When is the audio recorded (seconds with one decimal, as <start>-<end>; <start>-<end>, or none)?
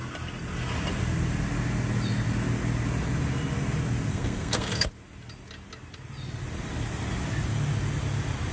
0.0-4.1; 4.9-8.5